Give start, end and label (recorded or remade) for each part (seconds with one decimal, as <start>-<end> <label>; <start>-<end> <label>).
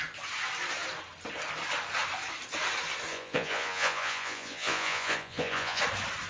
0.0-3.1 recorded; 3.1-5.8 remade; 5.8-6.3 recorded